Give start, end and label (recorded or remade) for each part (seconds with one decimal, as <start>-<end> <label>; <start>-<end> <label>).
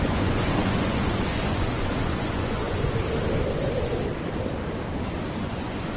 0.0-3.0 remade; 3.0-5.4 recorded; 5.4-6.0 remade